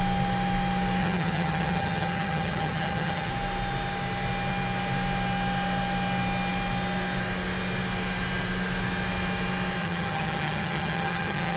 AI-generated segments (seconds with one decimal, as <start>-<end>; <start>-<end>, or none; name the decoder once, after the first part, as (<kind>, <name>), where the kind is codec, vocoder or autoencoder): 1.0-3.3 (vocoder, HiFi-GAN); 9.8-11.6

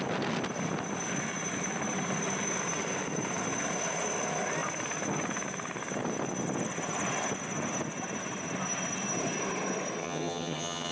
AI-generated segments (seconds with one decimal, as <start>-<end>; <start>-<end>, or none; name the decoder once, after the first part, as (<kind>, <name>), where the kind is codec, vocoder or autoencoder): 10.0-10.9 (vocoder, HiFi-GAN)

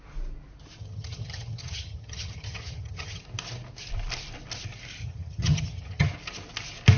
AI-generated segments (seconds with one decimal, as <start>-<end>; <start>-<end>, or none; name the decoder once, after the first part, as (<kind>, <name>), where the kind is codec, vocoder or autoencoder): 0.8-3.2 (vocoder, HiFi-GAN); 5.0-6.1